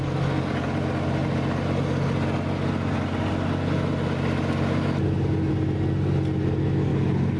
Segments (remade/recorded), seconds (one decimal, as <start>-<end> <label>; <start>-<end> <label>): 0.0-6.9 recorded; 6.9-7.4 remade